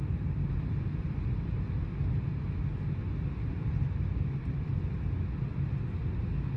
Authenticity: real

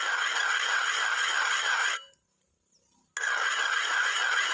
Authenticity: real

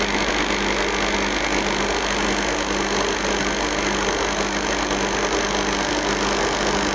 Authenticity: real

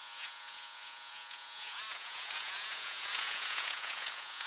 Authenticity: fake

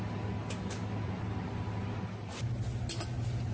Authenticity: real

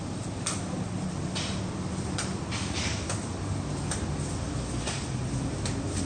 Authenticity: real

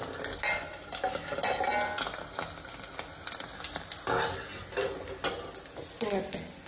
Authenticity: real